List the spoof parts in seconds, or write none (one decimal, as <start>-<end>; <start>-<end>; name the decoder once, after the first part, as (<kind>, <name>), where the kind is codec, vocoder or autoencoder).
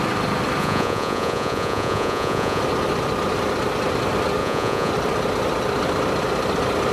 0.6-2.6 (vocoder, Vocos); 4.4-4.9